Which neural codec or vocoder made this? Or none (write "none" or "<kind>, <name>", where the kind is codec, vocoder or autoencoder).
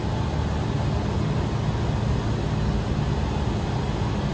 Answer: none